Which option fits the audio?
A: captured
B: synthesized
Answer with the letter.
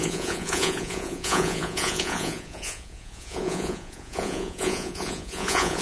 B